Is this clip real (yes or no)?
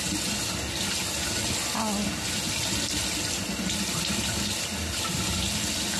yes